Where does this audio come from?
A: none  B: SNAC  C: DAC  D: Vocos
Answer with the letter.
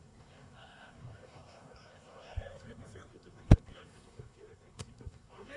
B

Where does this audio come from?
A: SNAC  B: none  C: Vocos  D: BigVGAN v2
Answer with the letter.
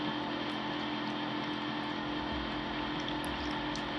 B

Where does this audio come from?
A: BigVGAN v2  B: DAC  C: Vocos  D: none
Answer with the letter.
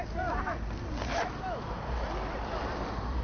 D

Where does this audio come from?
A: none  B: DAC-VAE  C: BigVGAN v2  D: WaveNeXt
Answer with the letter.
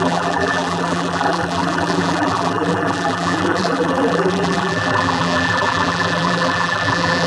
C